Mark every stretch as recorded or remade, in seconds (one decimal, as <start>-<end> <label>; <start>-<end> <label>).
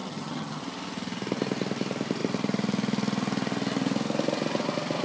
0.0-0.6 remade; 0.6-5.0 recorded